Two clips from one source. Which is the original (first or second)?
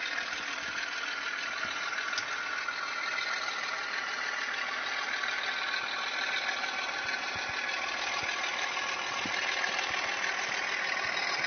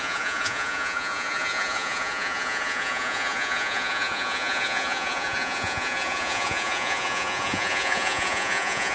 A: first